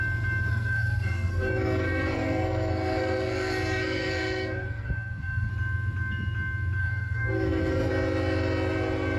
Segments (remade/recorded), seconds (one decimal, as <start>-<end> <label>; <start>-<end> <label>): 0.0-0.5 recorded; 0.5-5.5 remade; 5.5-6.8 recorded; 6.8-7.9 remade; 7.9-9.2 recorded